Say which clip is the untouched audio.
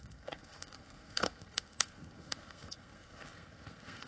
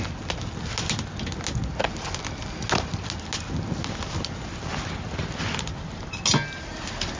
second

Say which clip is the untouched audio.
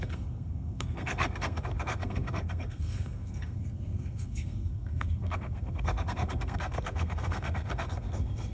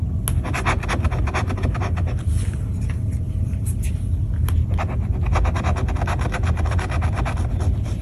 second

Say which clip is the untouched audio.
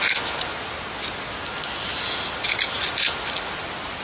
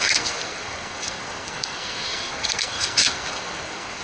first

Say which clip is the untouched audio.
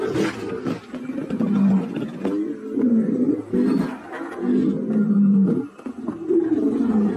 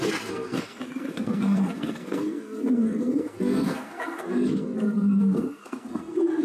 first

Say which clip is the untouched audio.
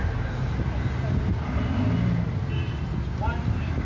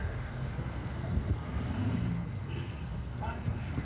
first